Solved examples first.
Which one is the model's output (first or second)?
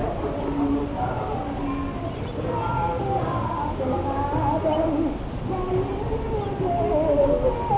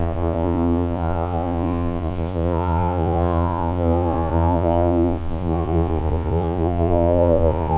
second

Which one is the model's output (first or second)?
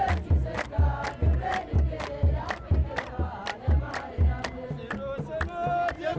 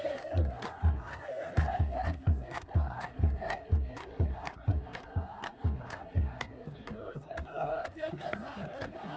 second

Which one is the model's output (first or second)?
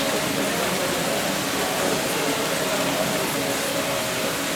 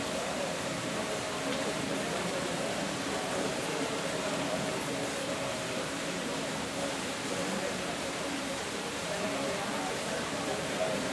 second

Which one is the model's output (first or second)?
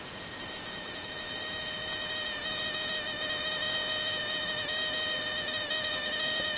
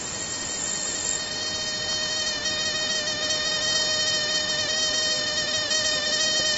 first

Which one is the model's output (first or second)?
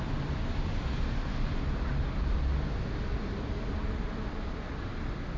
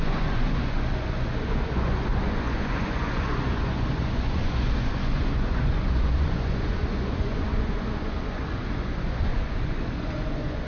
second